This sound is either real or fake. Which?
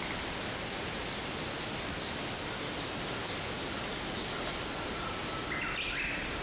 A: real